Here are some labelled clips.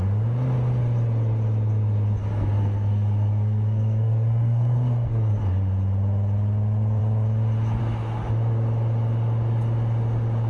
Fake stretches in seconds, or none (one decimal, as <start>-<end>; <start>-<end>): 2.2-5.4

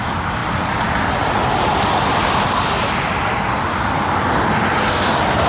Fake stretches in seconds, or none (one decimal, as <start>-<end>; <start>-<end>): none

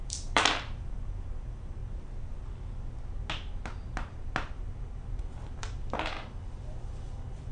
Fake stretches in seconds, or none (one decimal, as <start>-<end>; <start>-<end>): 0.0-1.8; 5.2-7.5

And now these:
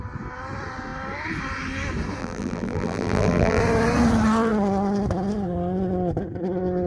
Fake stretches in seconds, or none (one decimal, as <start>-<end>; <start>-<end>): 2.2-3.6

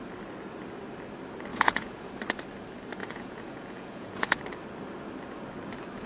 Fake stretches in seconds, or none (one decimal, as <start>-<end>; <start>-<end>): 1.5-2.1; 3.0-4.4